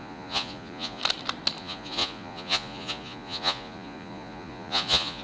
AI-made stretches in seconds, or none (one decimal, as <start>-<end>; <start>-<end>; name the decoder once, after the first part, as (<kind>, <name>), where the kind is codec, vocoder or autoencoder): 0.0-1.0 (vocoder, Vocos); 1.6-5.2